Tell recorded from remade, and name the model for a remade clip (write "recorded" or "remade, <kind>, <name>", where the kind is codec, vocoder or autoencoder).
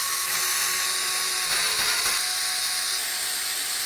recorded